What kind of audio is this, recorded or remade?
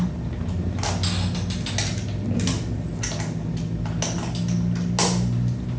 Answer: recorded